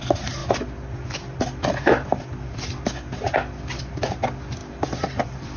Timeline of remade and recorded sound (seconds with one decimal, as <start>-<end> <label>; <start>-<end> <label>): 0.0-4.6 recorded; 4.6-5.6 remade